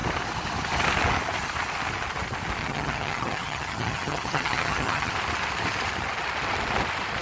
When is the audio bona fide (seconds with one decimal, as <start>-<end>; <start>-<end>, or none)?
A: 0.0-2.6; 5.1-7.2